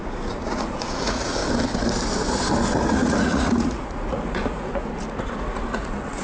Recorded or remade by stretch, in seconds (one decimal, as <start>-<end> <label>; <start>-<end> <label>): 0.0-1.4 remade; 1.4-2.9 recorded; 2.9-6.2 remade